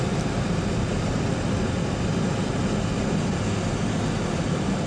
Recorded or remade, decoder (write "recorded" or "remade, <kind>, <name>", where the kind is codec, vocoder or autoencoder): recorded